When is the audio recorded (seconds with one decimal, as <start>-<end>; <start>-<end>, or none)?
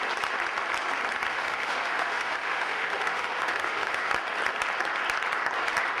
0.0-1.3; 4.1-6.0